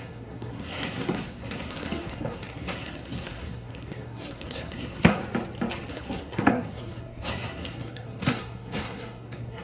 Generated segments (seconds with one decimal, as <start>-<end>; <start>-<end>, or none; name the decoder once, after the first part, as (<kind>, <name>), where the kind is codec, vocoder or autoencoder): 0.0-5.2 (codec, SNAC); 5.9-9.6